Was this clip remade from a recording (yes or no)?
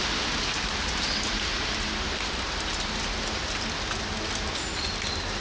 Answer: no